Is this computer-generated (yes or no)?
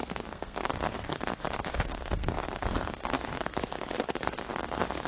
yes